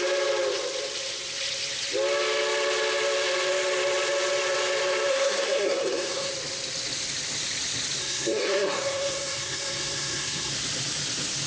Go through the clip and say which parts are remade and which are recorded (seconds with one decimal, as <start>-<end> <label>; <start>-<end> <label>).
0.0-5.1 recorded; 5.1-6.3 remade; 6.3-8.0 recorded; 8.0-10.5 remade; 10.5-11.5 recorded